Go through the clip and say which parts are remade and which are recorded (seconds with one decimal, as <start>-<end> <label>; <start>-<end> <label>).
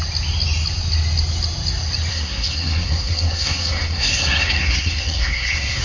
0.0-2.1 recorded; 2.1-5.8 remade